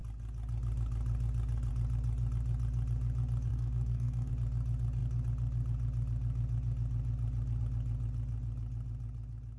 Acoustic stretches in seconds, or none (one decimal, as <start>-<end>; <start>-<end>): 0.0-3.5; 4.3-9.6